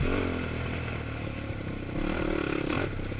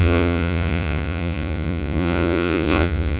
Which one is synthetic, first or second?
second